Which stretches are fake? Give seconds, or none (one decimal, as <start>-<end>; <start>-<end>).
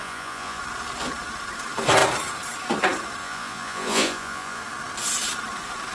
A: 0.0-0.6; 3.2-4.6